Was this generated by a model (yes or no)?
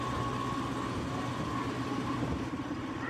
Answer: no